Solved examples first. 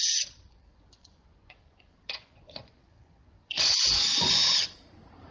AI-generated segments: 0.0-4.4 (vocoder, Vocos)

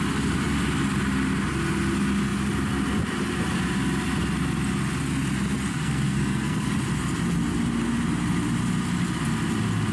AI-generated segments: 5.7-6.7 (codec, SNAC)

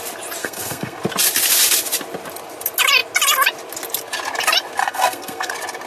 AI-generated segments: 0.4-1.0 (codec, SNAC); 4.8-5.5

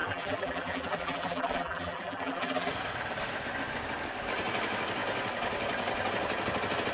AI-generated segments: 0.0-2.7 (vocoder, BigVGAN v2)

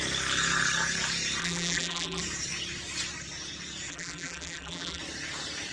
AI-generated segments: 1.4-2.2 (vocoder, BigVGAN v2); 3.9-5.0